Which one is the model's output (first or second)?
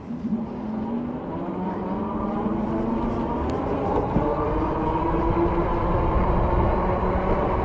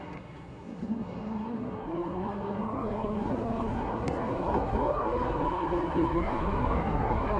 second